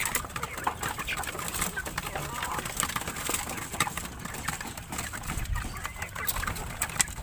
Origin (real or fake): real